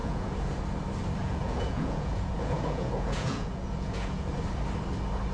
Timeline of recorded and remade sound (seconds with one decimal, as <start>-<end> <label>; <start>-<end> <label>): 0.0-0.6 remade; 0.6-1.2 recorded; 1.2-4.3 remade; 4.3-5.3 recorded

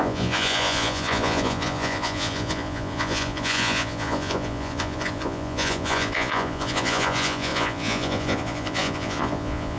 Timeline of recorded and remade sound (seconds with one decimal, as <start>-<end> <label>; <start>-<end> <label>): 0.0-9.8 remade

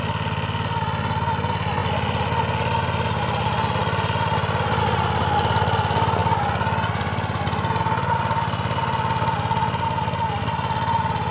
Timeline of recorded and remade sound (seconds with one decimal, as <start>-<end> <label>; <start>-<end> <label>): 0.0-11.3 recorded

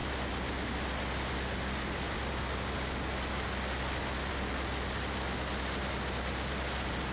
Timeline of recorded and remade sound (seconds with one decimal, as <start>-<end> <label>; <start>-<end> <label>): 0.0-7.1 recorded

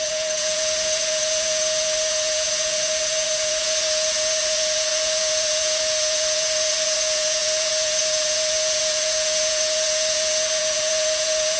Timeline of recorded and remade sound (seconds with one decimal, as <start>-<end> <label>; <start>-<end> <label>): 0.0-11.6 remade

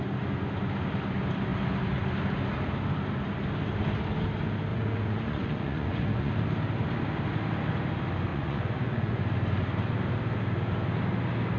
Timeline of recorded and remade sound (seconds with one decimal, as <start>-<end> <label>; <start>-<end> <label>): 0.0-4.7 recorded; 4.7-6.3 remade; 6.3-8.3 recorded; 8.3-9.2 remade; 9.2-11.6 recorded

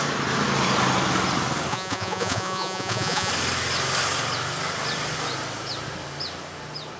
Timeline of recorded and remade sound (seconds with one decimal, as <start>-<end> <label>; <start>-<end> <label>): 0.0-1.7 recorded; 1.7-3.3 remade; 3.3-7.0 recorded